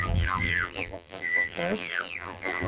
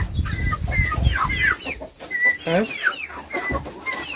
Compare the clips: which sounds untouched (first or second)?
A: second